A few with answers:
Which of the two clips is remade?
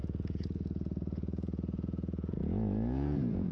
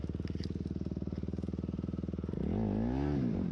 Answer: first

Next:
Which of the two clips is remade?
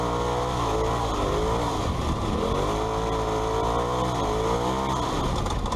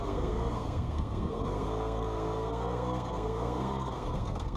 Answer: second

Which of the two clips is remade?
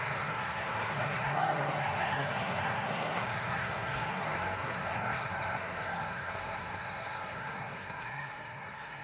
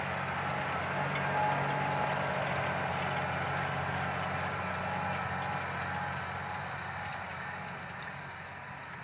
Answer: first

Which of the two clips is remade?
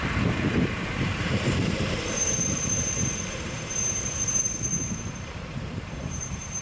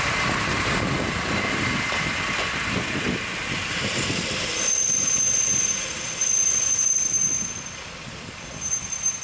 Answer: first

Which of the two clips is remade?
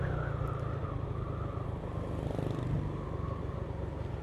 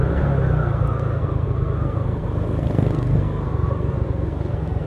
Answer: second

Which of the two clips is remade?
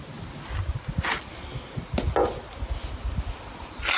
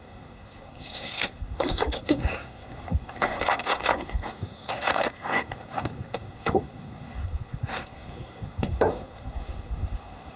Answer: second